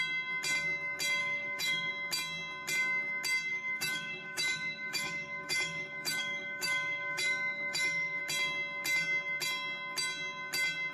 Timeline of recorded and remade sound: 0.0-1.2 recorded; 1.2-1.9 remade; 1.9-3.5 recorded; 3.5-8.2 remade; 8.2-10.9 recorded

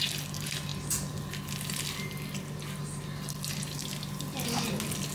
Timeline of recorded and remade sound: 0.0-5.1 recorded

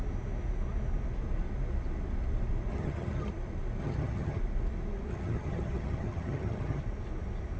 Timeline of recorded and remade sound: 0.0-2.7 recorded; 2.7-3.3 remade; 3.3-3.8 recorded; 3.8-4.4 remade; 4.4-5.1 recorded; 5.1-6.8 remade; 6.8-7.6 recorded

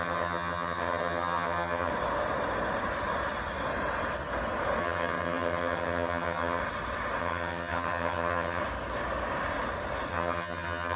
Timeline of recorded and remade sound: 0.0-1.9 remade; 1.9-4.8 recorded; 4.8-6.6 remade; 6.6-7.2 recorded; 7.2-8.6 remade; 8.6-10.1 recorded; 10.1-11.0 remade